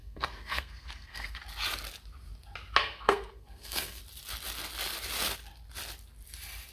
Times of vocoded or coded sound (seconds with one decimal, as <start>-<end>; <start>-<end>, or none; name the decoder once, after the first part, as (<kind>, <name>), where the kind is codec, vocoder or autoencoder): 0.0-1.4 (codec, SNAC); 2.8-4.0

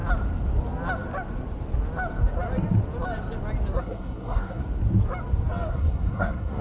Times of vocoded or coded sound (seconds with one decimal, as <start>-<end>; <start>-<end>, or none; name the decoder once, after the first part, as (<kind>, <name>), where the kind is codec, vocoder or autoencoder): 3.8-4.6 (codec, SNAC); 5.7-6.6

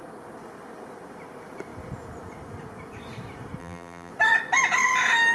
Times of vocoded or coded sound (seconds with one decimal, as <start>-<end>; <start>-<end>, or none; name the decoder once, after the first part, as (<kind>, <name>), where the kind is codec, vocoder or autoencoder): 3.6-4.1 (vocoder, BigVGAN v2)